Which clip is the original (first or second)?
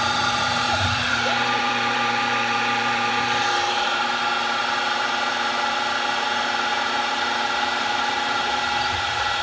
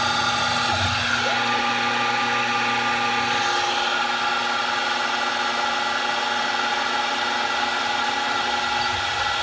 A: second